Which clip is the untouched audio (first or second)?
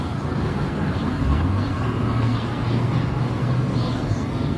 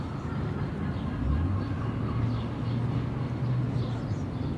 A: second